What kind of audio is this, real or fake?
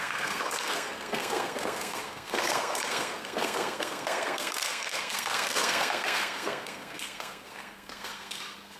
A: fake